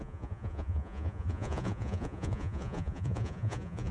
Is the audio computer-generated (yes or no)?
yes